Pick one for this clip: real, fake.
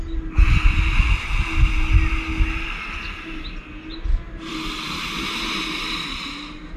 real